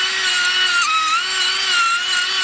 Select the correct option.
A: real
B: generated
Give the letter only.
A